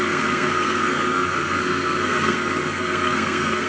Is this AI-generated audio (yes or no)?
yes